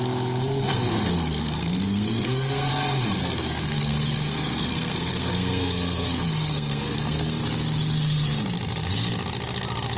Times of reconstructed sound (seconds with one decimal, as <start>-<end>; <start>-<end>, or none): 0.7-2.7; 3.2-7.4